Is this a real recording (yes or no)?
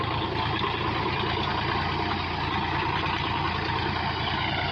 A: yes